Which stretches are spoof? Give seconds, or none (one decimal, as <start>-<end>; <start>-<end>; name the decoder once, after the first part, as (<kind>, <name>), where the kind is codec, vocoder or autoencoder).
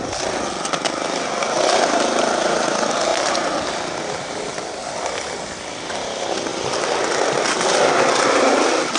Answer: none